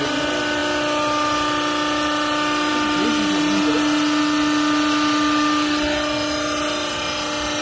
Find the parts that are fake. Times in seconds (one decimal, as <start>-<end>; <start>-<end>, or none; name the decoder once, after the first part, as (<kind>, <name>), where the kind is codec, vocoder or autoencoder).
none